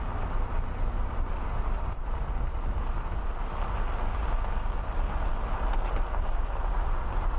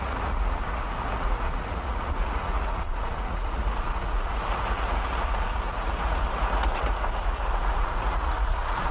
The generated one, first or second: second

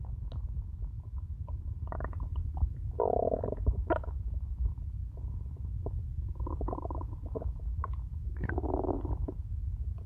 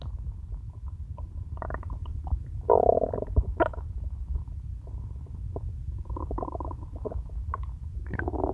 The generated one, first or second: second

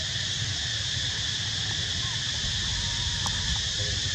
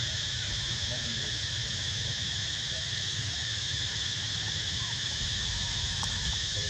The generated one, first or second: second